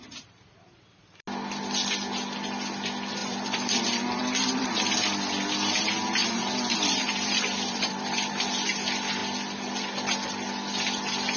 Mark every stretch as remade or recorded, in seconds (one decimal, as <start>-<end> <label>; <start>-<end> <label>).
0.0-3.2 recorded; 3.2-4.7 remade; 4.7-6.2 recorded; 6.2-8.3 remade; 8.3-11.4 recorded